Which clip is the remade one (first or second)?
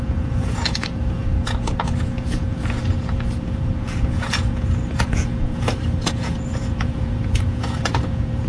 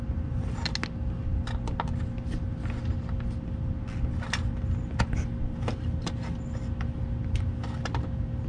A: first